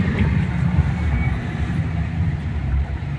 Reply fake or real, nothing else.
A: fake